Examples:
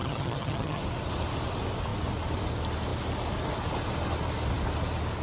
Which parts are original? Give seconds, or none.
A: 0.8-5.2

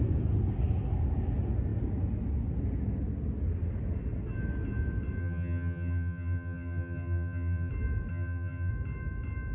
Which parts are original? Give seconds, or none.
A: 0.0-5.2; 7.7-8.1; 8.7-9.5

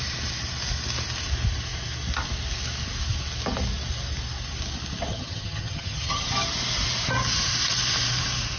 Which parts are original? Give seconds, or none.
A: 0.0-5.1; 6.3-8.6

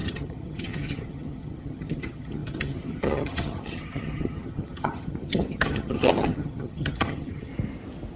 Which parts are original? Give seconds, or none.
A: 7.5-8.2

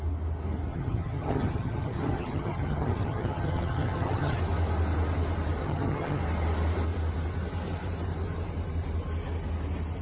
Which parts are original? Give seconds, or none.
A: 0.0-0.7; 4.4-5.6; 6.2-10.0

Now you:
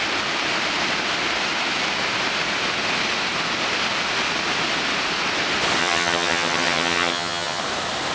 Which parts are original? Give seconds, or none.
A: 0.0-5.8; 7.6-8.1

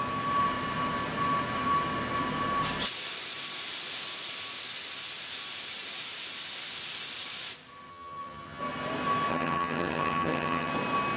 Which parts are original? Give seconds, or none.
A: 0.0-7.9; 8.6-9.3; 10.7-11.2